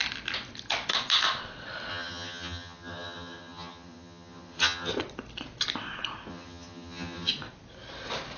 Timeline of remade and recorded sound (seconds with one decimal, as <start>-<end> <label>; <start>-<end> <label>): 0.0-1.9 recorded; 1.9-4.9 remade; 4.9-6.3 recorded; 6.3-7.3 remade; 7.3-8.4 recorded